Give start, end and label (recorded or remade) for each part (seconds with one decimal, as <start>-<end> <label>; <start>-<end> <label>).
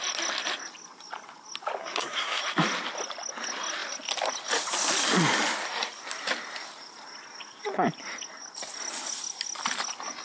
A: 0.0-1.8 recorded; 1.8-2.4 remade; 2.4-10.2 recorded